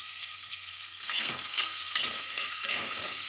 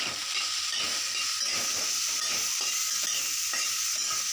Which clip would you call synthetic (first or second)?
first